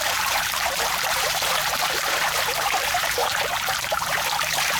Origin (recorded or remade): remade